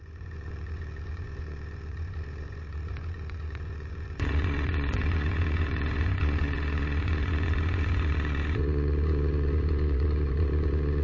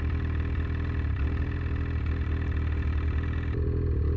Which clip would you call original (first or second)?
second